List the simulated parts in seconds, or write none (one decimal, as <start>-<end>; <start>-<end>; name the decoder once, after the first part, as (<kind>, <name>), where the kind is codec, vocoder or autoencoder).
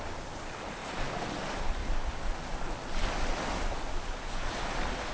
none